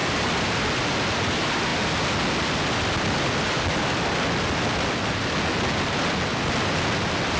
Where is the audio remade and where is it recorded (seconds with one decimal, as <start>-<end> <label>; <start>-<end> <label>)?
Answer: 0.0-7.4 recorded

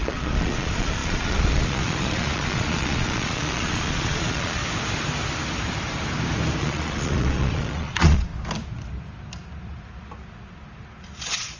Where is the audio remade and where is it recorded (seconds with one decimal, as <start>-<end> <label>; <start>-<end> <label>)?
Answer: 0.0-4.6 remade; 4.6-6.6 recorded; 6.6-8.3 remade; 8.3-11.2 recorded; 11.2-11.6 remade

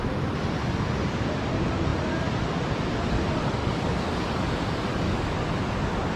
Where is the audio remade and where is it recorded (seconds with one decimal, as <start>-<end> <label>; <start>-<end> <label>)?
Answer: 0.0-3.6 recorded; 3.6-4.5 remade; 4.5-4.9 recorded; 4.9-5.6 remade; 5.6-6.2 recorded